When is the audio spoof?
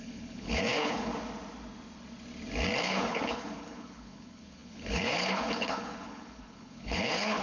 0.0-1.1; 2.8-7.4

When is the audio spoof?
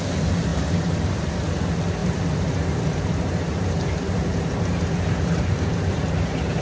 0.5-1.5; 2.0-6.0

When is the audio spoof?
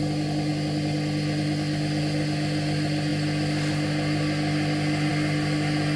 none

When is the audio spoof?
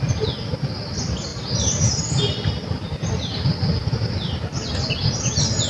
1.3-4.7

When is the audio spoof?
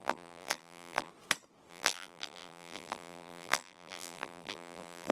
0.0-1.1; 1.7-5.1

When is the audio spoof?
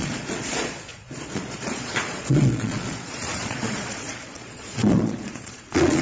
0.0-6.0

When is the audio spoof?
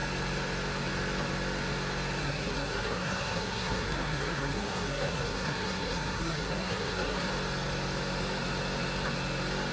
2.2-7.3